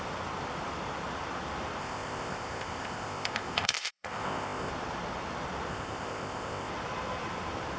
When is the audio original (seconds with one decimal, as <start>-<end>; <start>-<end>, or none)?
0.0-1.8; 4.7-5.7; 6.7-7.8